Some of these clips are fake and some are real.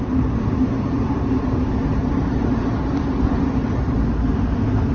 fake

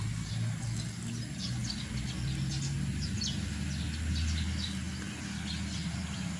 real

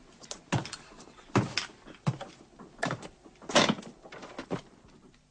real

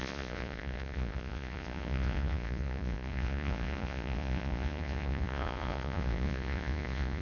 fake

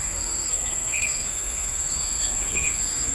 fake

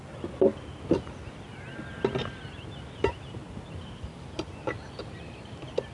real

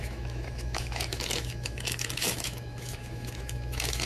fake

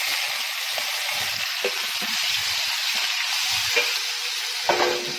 real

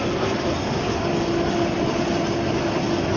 fake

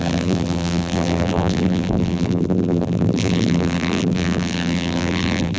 fake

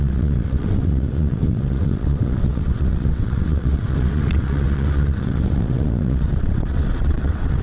fake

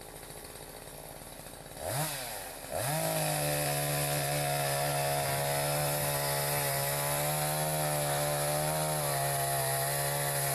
real